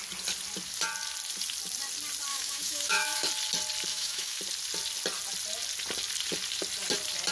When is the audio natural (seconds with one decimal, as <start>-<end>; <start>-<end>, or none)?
0.0-2.3; 3.3-3.9; 4.4-7.3